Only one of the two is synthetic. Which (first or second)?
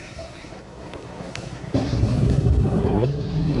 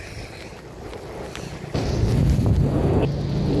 first